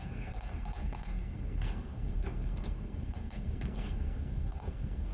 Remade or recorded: remade